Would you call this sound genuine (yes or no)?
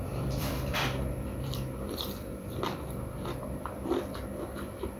no